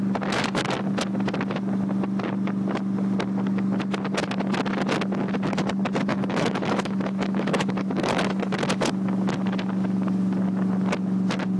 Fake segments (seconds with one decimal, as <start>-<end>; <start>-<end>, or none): 6.1-8.2